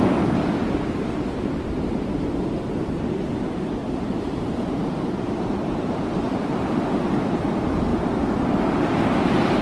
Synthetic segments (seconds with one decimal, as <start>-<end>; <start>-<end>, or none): 3.8-5.6